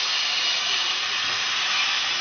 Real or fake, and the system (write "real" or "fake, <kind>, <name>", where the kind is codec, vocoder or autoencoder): real